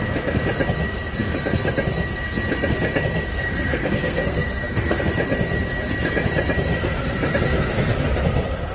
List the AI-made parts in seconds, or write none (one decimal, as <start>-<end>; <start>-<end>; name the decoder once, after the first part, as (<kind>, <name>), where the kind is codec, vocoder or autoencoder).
3.3-5.0 (codec, SNAC)